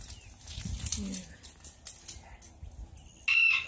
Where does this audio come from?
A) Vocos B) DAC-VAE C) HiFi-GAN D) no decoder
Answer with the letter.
D